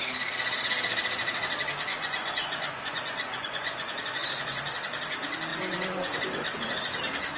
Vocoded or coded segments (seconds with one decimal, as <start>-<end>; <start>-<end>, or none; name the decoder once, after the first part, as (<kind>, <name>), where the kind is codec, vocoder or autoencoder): 1.9-4.6 (vocoder, Vocos); 5.5-6.2